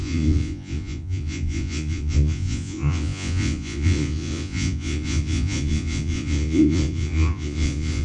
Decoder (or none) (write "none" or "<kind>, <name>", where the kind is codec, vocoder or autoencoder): vocoder, Vocos